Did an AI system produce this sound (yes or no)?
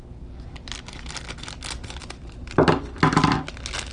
no